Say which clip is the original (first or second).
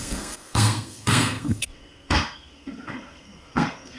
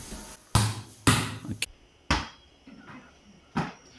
second